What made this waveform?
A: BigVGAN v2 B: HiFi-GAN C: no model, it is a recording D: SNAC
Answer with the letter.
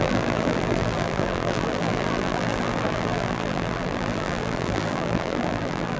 A